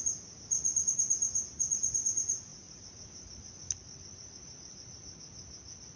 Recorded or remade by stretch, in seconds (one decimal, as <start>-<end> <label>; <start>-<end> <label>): 0.0-6.0 recorded